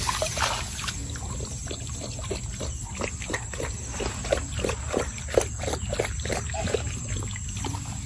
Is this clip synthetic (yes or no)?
no